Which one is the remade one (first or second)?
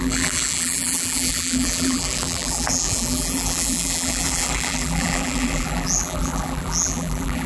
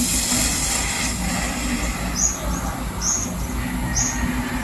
first